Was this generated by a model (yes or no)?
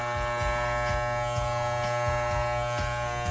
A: no